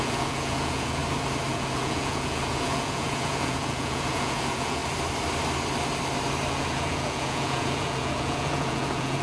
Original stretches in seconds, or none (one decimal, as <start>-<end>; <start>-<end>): 1.0-1.5; 4.8-6.5